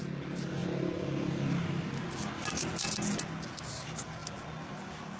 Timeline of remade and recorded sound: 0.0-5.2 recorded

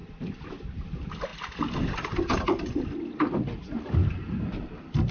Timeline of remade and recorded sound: 0.0-5.1 recorded

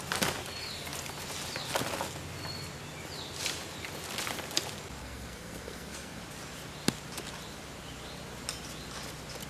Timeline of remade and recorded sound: 0.0-5.0 recorded; 5.0-6.2 remade; 6.2-9.5 recorded

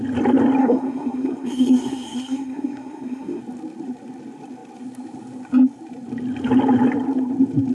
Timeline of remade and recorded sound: 0.0-0.6 recorded; 0.6-3.4 remade; 3.4-7.7 recorded

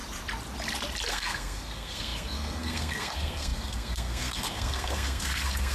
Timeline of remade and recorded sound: 0.0-1.1 recorded; 1.1-5.7 remade